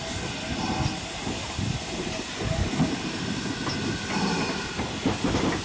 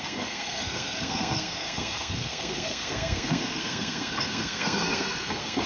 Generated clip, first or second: second